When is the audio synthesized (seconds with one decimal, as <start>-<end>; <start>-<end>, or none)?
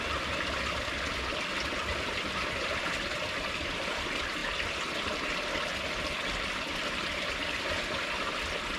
none